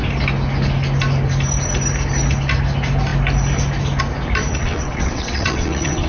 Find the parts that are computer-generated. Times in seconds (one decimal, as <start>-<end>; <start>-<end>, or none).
4.5-6.1